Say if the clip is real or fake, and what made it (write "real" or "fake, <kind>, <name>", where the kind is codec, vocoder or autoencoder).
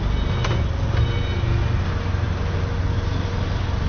real